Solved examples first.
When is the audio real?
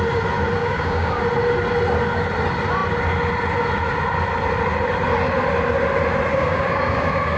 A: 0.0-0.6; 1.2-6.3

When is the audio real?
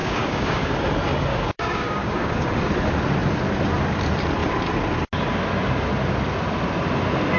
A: 0.8-1.3; 2.5-7.4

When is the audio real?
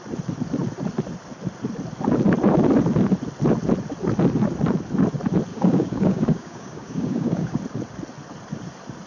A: 0.0-5.5; 7.6-9.1